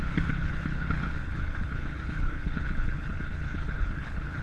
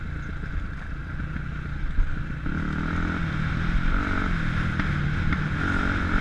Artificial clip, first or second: first